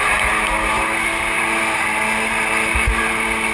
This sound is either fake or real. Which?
real